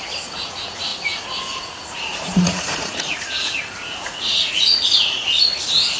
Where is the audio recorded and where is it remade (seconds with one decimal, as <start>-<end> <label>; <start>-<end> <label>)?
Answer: 0.0-5.2 remade; 5.2-6.0 recorded